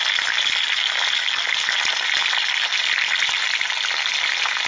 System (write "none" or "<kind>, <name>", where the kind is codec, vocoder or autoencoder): none